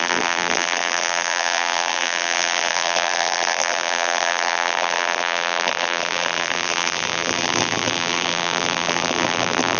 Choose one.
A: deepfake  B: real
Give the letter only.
A